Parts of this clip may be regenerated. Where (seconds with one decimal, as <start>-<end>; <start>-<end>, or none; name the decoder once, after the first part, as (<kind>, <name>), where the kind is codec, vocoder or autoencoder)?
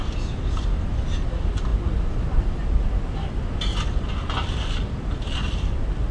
none